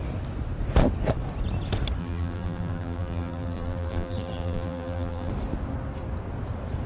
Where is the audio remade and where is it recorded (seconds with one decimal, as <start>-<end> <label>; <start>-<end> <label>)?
0.0-2.0 recorded; 2.0-5.3 remade; 5.3-6.9 recorded